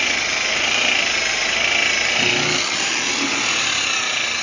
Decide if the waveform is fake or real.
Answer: real